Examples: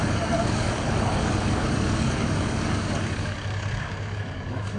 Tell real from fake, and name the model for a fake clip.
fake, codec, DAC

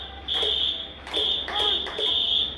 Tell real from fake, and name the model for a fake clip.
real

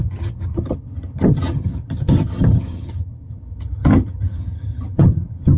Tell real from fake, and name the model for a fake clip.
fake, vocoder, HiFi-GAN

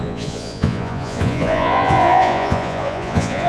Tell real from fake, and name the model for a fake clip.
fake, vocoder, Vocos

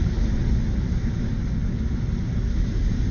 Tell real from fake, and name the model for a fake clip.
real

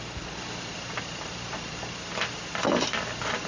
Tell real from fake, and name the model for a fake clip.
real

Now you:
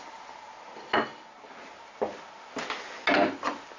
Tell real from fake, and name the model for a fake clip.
real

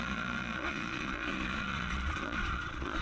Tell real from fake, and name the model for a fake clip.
fake, vocoder, Vocos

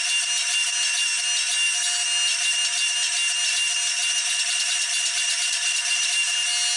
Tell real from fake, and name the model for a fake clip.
real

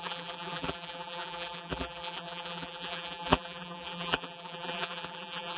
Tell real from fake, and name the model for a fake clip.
fake, vocoder, BigVGAN v2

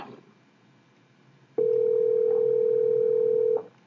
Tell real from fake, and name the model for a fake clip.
real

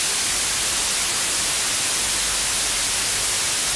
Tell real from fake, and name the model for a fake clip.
real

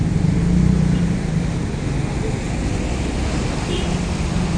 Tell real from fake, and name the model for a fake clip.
real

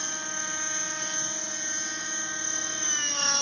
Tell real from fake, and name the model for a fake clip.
real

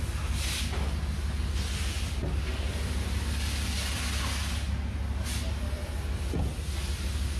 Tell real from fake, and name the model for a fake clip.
real